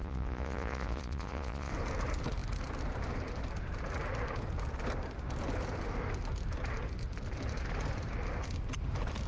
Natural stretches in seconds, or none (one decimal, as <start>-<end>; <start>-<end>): 1.7-9.3